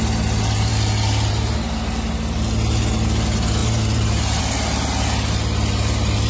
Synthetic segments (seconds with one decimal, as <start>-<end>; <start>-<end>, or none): 3.6-4.4